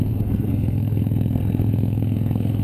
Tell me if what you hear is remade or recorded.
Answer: remade